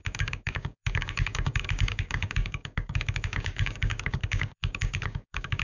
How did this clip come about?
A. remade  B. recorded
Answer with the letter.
A